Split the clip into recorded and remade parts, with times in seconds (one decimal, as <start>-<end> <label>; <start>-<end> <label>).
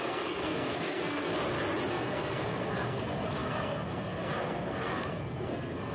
0.0-1.3 remade; 1.3-1.9 recorded; 1.9-5.9 remade